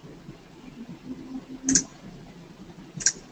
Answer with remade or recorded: recorded